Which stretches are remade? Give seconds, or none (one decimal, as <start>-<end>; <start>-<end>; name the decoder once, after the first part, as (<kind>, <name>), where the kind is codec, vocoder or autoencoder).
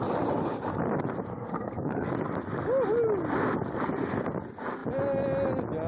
1.3-2.1 (codec, SNAC)